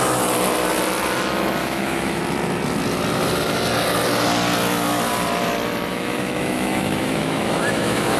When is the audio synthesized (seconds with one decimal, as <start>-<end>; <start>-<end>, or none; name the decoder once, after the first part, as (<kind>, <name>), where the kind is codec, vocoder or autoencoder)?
1.6-2.2 (autoencoder, DAC-VAE); 5.9-8.2